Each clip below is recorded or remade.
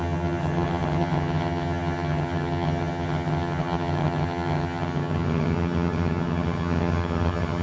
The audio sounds remade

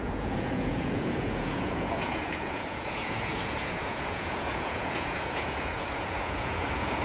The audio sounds remade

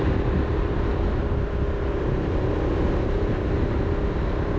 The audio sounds recorded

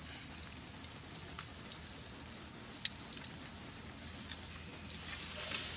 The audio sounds recorded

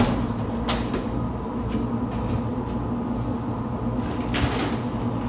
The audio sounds recorded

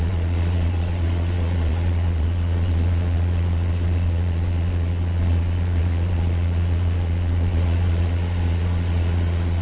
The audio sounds remade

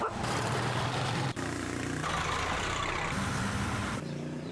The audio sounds remade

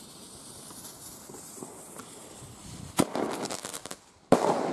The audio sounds recorded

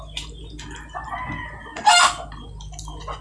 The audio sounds recorded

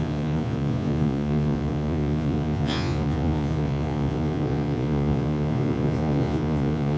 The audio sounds remade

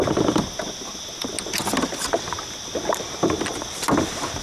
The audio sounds recorded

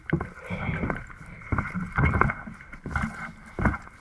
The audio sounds recorded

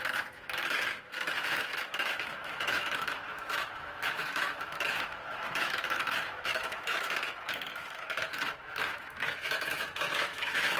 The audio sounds remade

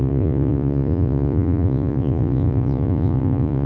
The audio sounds remade